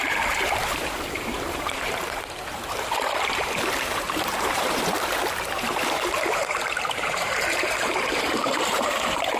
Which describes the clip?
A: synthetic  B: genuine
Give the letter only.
A